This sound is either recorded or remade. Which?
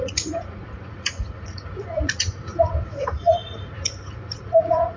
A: remade